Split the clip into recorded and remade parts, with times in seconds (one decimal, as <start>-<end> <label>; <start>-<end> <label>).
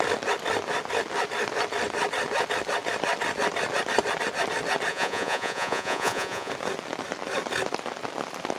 0.0-4.9 recorded; 4.9-6.5 remade; 6.5-8.6 recorded